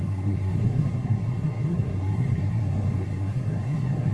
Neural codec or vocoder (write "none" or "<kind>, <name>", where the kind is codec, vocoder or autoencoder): codec, SNAC